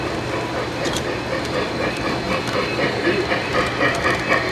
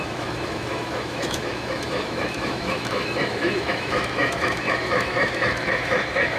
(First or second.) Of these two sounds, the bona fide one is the first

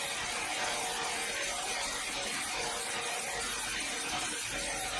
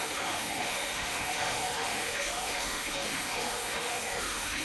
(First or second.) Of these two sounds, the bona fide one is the first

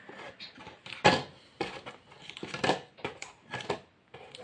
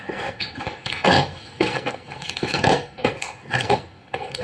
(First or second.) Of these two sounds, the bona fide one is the first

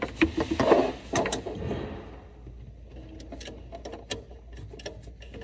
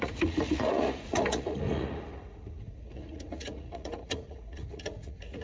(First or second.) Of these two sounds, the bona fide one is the first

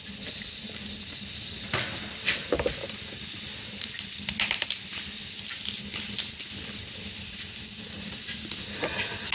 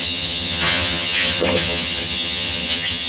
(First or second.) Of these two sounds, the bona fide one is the first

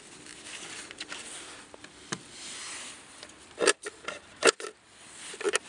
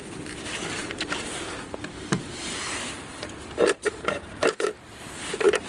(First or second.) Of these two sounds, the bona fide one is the first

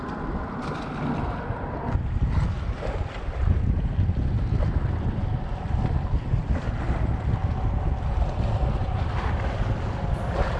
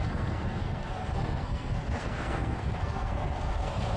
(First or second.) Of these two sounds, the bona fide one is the first